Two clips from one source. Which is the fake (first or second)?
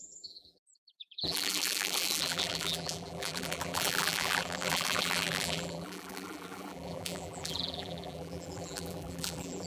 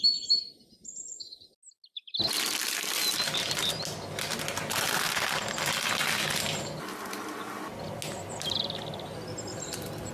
first